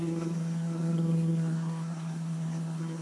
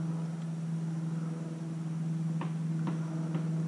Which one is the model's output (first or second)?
first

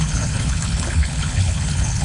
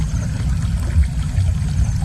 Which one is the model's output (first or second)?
first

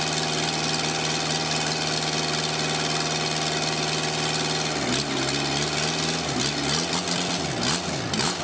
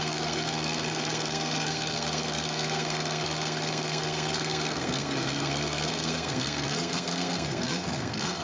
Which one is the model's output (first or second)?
second